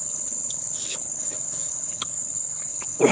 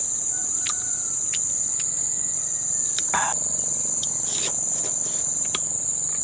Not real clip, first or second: first